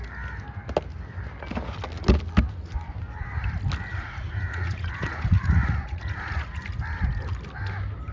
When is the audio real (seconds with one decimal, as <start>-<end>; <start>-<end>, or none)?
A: 0.0-3.9; 6.6-8.1